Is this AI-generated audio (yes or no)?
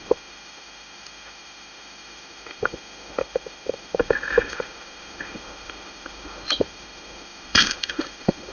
yes